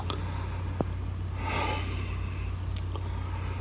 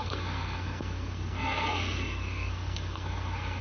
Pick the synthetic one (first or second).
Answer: second